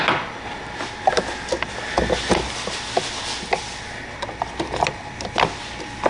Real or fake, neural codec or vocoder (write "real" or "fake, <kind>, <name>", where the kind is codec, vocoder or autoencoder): real